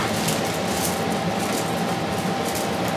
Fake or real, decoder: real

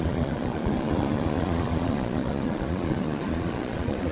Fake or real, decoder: fake, vocoder, Vocos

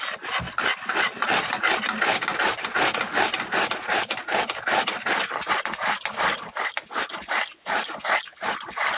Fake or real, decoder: real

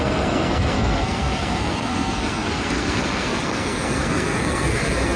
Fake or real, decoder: fake, codec, SNAC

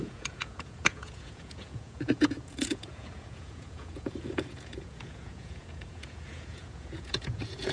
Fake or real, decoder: fake, vocoder, Vocos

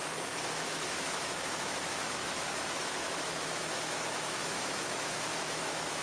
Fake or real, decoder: fake, autoencoder, DAC-VAE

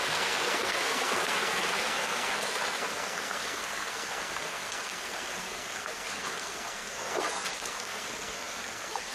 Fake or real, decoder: fake, codec, SNAC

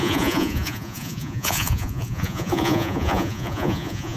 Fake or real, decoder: fake, vocoder, Vocos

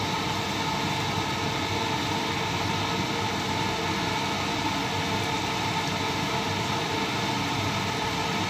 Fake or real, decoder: real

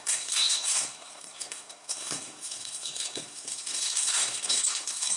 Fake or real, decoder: fake, codec, SNAC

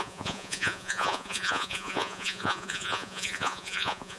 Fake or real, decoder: fake, vocoder, Vocos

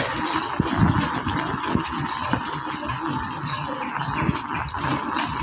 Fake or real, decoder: real